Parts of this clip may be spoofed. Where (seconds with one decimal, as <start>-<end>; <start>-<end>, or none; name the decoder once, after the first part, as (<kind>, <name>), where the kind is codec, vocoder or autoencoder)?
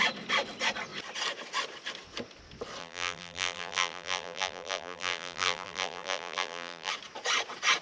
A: 2.8-6.9 (vocoder, BigVGAN v2)